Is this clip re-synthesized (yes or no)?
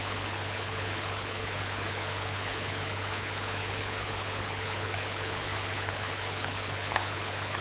yes